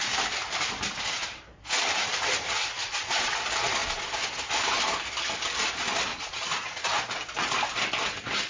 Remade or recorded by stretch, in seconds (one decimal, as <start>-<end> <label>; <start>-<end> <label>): 0.0-2.8 recorded; 2.8-3.4 remade; 3.4-6.1 recorded; 6.1-7.0 remade; 7.0-8.5 recorded